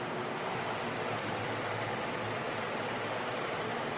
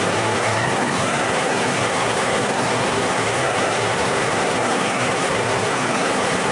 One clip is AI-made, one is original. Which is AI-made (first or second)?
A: second